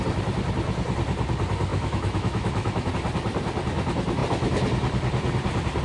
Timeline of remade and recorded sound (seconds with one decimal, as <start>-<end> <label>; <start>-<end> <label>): 0.0-1.7 recorded; 1.7-2.9 remade; 2.9-5.8 recorded